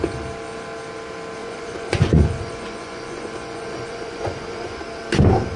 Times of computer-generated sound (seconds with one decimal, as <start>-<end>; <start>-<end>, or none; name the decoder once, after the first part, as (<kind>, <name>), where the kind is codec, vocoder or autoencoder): 1.4-4.8 (vocoder, Vocos)